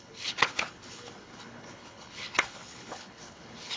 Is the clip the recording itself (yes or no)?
no